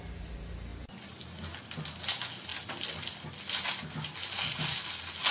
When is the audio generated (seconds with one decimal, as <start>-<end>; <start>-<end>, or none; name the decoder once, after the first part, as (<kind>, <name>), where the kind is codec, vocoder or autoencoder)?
none